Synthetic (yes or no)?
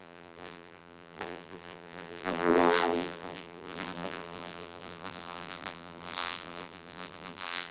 yes